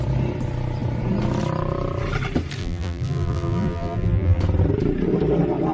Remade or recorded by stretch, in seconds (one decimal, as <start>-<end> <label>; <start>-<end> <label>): 0.0-2.6 recorded; 2.6-4.4 remade; 4.4-5.7 recorded